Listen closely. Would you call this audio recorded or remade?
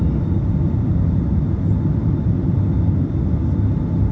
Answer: recorded